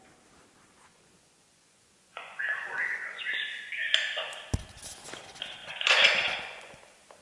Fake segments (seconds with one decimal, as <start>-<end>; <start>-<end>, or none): 0.9-3.7; 5.6-6.8